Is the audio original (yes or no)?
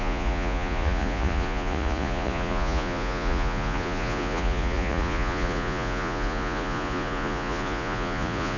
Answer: no